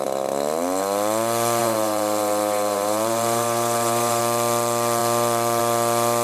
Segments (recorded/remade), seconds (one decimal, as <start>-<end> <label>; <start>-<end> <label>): 0.0-1.6 recorded; 1.6-4.2 remade; 4.2-6.2 recorded